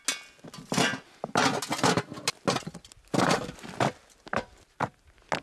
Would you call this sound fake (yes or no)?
no